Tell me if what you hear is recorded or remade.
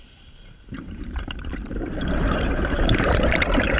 remade